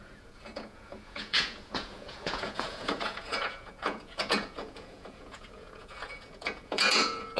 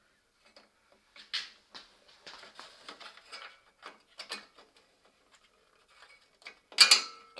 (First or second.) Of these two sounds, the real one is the second